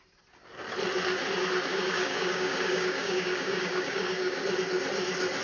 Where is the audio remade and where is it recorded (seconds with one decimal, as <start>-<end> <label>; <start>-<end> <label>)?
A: 0.0-1.7 recorded; 1.7-4.4 remade; 4.4-5.4 recorded